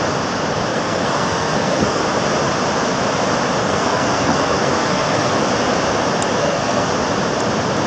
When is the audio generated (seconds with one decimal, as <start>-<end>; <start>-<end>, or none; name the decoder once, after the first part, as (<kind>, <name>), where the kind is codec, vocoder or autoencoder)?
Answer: 0.7-2.0 (codec, SNAC); 3.6-5.5; 6.4-6.9